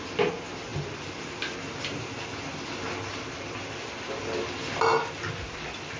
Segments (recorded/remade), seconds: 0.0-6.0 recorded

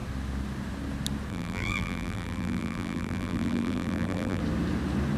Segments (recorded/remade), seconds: 0.0-1.3 recorded; 1.3-4.4 remade; 4.4-5.2 recorded

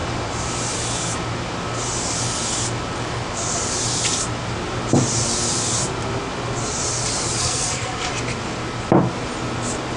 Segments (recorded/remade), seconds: 0.0-7.4 recorded; 7.4-8.1 remade; 8.1-10.0 recorded

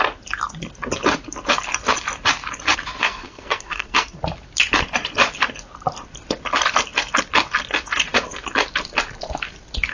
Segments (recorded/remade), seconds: 0.0-3.0 recorded; 3.0-4.2 remade; 4.2-9.9 recorded

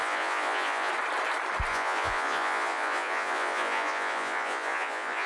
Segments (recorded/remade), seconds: 0.0-0.9 remade; 0.9-1.7 recorded; 1.7-5.3 remade